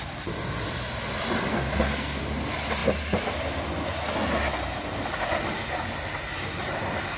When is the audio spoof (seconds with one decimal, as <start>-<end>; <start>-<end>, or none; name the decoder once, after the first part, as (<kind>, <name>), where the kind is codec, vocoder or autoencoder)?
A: 1.5-2.2 (codec, SNAC)